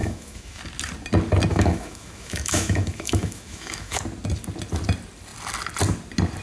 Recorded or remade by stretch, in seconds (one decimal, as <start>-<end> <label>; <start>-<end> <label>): 0.0-0.6 remade; 0.6-1.5 recorded; 1.5-4.0 remade; 4.0-6.4 recorded